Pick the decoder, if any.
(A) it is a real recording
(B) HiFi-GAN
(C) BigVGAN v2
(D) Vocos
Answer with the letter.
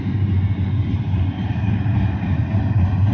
C